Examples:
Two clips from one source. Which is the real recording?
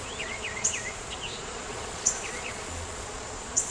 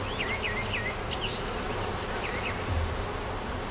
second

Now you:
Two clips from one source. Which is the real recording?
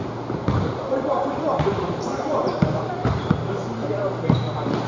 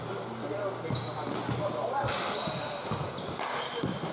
second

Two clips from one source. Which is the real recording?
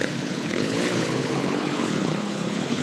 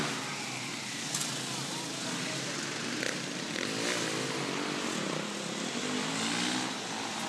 second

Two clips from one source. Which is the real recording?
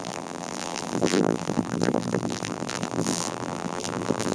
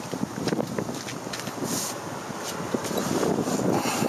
second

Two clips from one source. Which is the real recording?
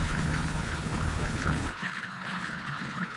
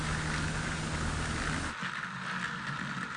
second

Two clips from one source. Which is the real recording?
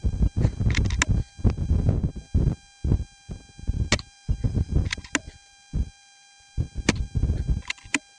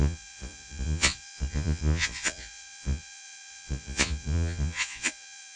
first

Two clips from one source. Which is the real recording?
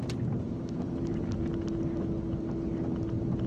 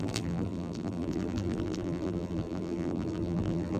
first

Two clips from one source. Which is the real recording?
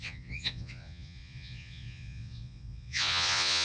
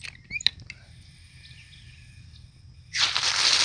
second